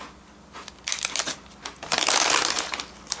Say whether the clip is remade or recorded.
recorded